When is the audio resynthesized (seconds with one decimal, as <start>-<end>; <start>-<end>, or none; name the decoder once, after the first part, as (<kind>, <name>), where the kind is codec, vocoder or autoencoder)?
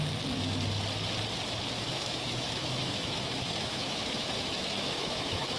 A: 1.9-5.6 (autoencoder, DAC-VAE)